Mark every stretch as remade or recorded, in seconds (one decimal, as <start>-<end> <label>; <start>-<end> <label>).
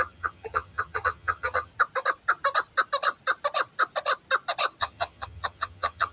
0.0-1.7 remade; 1.7-4.8 recorded; 4.8-6.1 remade